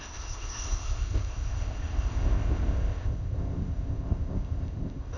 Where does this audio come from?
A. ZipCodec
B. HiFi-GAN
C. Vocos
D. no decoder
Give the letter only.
A